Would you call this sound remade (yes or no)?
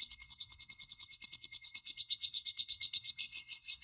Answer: yes